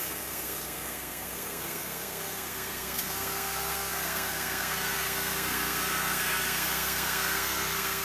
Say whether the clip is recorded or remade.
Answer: remade